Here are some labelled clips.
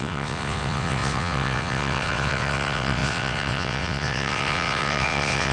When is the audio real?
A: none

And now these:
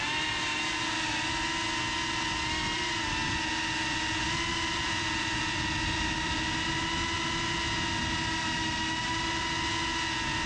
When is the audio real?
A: 0.0-3.2; 6.8-10.5